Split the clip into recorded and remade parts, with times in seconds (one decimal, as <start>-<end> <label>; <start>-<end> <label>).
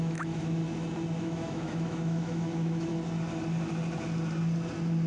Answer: 0.0-0.6 remade; 0.6-1.2 recorded; 1.2-2.9 remade; 2.9-5.1 recorded